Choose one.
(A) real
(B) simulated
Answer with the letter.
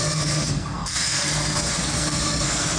B